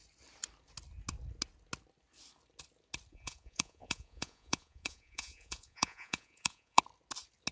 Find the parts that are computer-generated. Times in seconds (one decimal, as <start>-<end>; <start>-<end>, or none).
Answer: 3.1-6.8